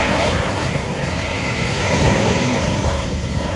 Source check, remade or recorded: remade